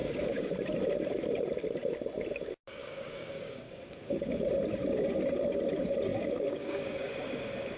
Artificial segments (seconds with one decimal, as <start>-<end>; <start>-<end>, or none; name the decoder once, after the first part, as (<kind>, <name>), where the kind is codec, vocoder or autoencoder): 0.0-0.5 (codec, DAC); 2.8-4.4; 6.1-7.1